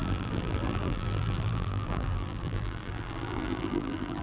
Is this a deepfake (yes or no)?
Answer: yes